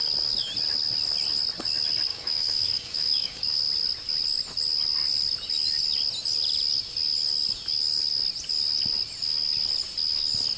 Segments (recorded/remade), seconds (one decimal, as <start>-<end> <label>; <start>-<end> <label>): 0.0-2.1 recorded; 2.1-3.6 remade; 3.6-10.6 recorded